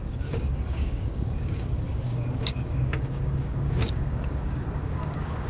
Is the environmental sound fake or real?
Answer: fake